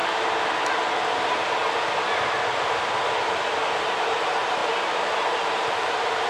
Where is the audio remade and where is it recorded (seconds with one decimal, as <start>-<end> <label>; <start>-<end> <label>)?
0.0-3.8 recorded; 3.8-6.3 remade